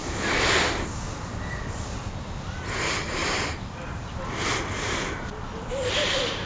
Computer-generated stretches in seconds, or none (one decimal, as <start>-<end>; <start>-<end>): 3.2-4.2